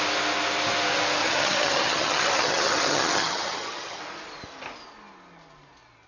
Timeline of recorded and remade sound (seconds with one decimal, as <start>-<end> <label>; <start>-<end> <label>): 0.0-1.2 recorded; 1.2-4.0 remade; 4.0-6.1 recorded